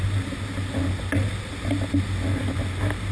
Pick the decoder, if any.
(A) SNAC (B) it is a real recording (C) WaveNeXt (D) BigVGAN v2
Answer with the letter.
B